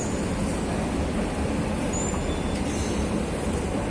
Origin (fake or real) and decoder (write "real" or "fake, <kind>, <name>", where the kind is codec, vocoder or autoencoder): real